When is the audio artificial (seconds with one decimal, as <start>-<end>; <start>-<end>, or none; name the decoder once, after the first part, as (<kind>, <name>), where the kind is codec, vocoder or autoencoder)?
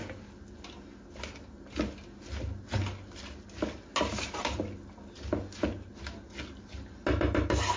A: none